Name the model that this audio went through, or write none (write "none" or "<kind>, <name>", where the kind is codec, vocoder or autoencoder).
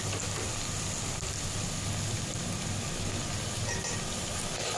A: none